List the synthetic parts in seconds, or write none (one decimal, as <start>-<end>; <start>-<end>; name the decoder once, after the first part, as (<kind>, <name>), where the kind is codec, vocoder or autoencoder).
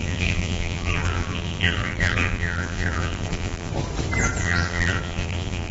0.0-3.7 (vocoder, BigVGAN v2); 4.4-5.7